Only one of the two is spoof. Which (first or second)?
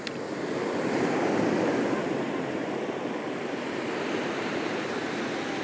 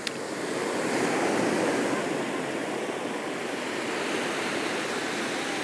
first